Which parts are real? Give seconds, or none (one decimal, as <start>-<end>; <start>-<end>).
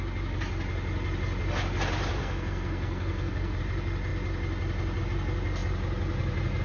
0.0-2.2; 3.6-6.6